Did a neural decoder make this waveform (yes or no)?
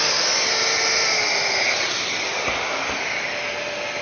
no